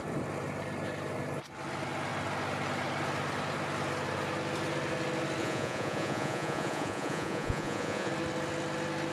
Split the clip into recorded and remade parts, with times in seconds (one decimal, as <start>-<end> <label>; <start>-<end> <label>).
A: 0.0-5.4 recorded; 5.4-8.1 remade; 8.1-9.1 recorded